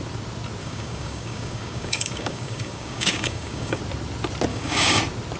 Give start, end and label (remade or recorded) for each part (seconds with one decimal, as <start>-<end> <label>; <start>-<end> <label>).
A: 0.0-0.6 recorded; 0.6-3.8 remade; 3.8-4.5 recorded; 4.5-5.0 remade; 5.0-5.4 recorded